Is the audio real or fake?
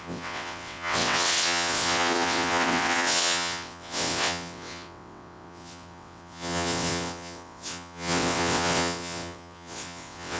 fake